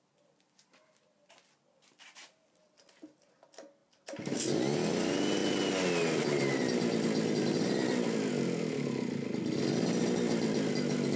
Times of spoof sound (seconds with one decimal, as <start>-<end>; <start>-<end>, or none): none